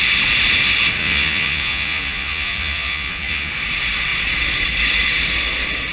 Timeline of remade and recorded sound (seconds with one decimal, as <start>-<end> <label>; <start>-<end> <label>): 0.0-1.0 recorded; 1.0-3.5 remade; 3.5-5.9 recorded